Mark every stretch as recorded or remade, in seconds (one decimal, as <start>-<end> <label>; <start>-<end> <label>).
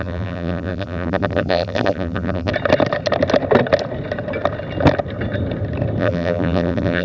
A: 0.0-2.5 remade; 2.5-6.0 recorded; 6.0-7.0 remade